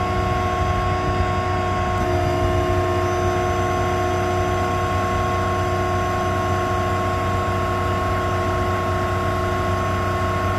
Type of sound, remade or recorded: recorded